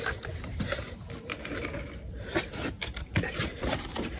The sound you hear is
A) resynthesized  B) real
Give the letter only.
A